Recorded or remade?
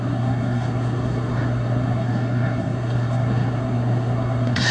remade